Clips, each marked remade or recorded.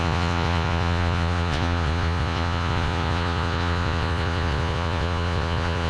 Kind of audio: remade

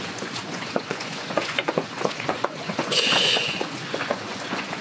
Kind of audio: remade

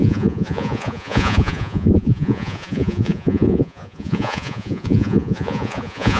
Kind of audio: remade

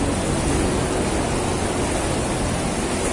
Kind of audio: recorded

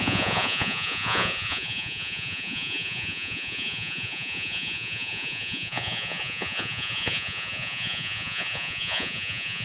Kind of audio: remade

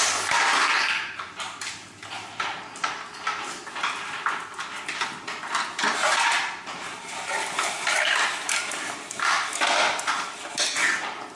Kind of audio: recorded